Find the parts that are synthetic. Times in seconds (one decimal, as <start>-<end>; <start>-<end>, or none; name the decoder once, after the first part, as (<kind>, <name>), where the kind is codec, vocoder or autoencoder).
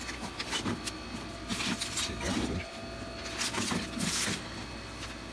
none